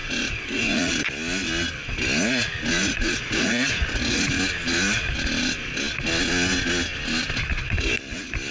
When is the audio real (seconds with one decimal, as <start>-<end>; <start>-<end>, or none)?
0.9-2.8; 4.2-8.5